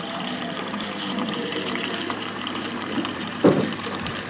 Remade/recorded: remade